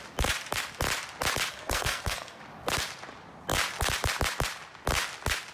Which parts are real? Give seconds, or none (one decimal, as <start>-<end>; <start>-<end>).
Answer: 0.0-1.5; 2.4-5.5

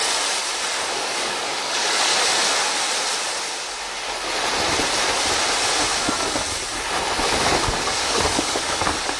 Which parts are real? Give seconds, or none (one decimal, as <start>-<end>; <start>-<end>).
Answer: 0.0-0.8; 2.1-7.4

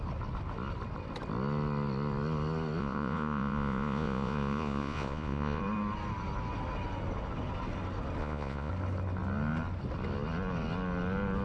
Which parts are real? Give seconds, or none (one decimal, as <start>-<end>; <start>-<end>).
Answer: 0.0-2.8; 5.6-8.2; 8.7-11.4

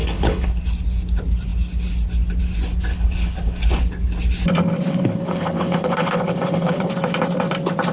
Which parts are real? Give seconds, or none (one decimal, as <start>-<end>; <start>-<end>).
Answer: 0.6-2.9; 3.8-4.9; 6.9-7.9